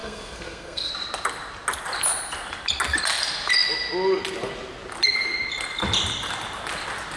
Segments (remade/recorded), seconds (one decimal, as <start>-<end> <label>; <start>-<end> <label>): 0.0-0.9 remade; 0.9-7.2 recorded